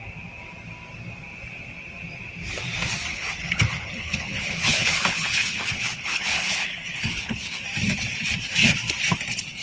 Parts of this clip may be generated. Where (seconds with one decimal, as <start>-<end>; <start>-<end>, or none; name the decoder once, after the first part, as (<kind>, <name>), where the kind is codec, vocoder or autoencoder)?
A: 3.1-7.6 (codec, HILCodec)